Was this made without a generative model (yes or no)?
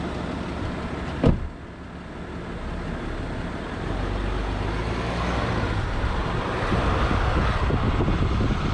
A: yes